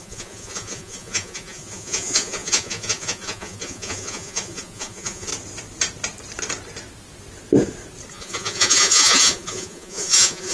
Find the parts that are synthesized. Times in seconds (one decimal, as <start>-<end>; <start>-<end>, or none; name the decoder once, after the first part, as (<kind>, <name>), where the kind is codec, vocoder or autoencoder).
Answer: 0.0-5.3 (vocoder, Vocos); 8.1-10.5